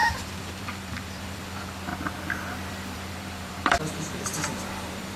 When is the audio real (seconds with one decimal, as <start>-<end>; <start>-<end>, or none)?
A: 1.9-2.7